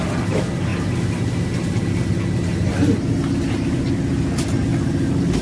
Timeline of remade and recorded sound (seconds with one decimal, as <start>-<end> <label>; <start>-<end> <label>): 0.0-5.4 recorded